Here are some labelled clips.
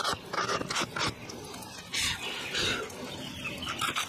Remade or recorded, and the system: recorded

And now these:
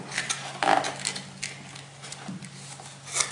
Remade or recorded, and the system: recorded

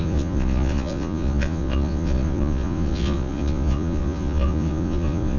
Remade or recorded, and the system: remade, vocoder, Vocos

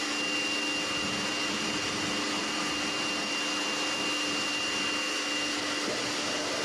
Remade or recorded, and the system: recorded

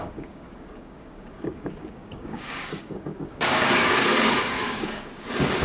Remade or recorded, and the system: remade, codec, DAC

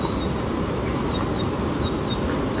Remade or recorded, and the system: recorded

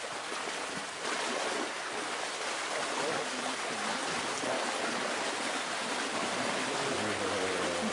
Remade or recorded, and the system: recorded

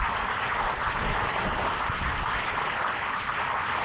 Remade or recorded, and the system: recorded